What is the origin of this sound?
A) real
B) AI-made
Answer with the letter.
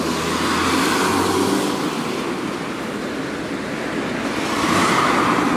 A